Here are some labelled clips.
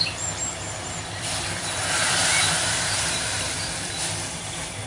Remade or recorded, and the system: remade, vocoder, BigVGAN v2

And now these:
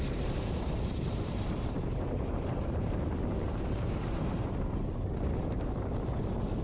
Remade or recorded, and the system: remade, vocoder, BigVGAN v2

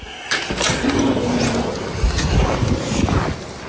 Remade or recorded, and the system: recorded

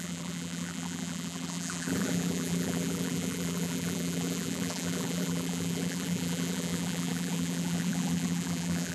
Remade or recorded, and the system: remade, vocoder, BigVGAN v2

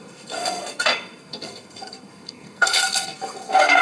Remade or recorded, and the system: remade, codec, SNAC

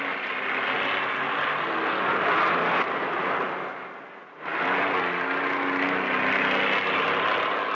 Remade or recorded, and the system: recorded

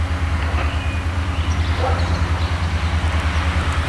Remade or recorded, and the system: recorded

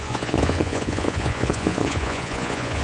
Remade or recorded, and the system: remade, vocoder, Vocos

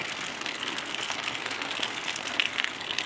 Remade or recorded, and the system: remade, codec, SNAC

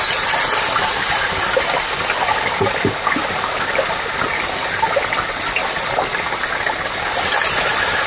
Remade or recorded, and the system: recorded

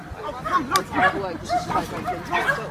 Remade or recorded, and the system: recorded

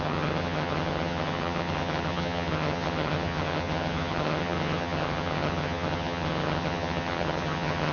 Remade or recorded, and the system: remade, vocoder, HiFi-GAN